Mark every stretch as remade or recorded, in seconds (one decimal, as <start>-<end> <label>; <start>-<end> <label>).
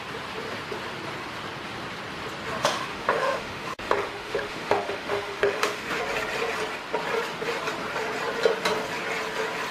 0.0-2.6 recorded; 2.6-6.0 remade; 6.0-9.7 recorded